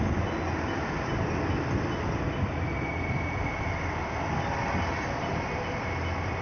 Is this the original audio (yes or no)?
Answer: yes